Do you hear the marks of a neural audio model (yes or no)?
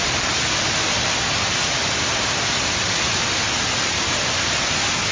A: no